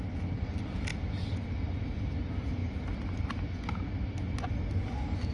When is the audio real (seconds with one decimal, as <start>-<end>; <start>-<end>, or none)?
0.0-5.3